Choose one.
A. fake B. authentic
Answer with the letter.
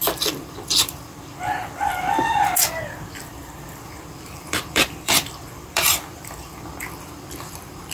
A